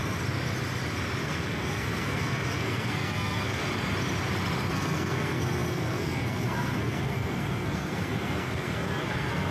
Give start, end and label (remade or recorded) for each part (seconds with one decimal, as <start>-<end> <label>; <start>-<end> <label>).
0.0-1.2 recorded; 1.2-3.6 remade; 3.6-4.7 recorded; 4.7-9.5 remade